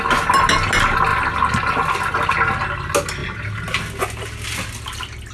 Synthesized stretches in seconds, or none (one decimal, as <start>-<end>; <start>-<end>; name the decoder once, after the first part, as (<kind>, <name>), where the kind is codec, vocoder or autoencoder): none